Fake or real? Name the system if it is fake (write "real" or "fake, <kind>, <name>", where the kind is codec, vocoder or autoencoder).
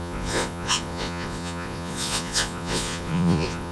fake, vocoder, Vocos